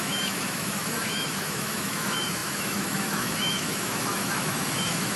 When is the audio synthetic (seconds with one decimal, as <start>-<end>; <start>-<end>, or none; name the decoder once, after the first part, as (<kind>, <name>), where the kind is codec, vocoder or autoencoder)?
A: 0.0-5.2 (autoencoder, DAC-VAE)